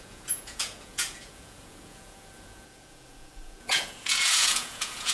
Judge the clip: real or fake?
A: fake